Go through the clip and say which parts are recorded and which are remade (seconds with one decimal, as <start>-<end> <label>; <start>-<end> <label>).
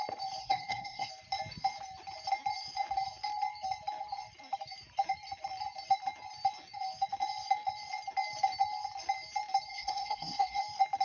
0.0-0.4 recorded; 0.4-1.1 remade; 1.1-9.7 recorded; 9.7-10.6 remade; 10.6-11.0 recorded